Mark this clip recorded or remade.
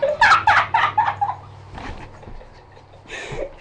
remade